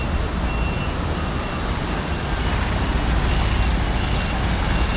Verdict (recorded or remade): recorded